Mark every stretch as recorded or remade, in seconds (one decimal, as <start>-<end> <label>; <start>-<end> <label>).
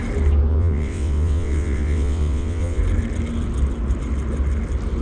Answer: 0.0-0.5 recorded; 0.5-2.8 remade; 2.8-5.0 recorded